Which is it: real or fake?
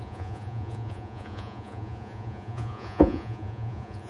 fake